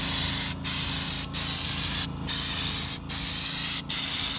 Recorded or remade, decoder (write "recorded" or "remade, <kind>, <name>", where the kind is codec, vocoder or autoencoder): recorded